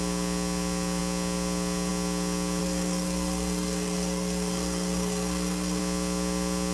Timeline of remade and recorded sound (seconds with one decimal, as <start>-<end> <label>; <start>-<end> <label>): 0.0-2.6 recorded; 2.6-5.8 remade; 5.8-6.7 recorded